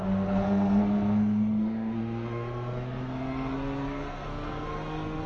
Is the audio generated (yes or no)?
yes